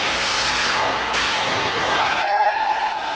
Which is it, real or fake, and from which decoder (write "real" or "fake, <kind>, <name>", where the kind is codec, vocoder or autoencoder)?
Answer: fake, codec, SNAC